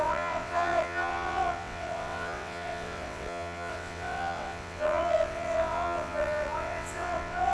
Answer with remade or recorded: remade